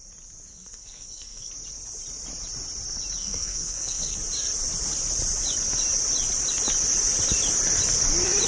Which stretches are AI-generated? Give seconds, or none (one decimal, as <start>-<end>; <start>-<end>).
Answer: 0.5-1.5; 3.2-4.2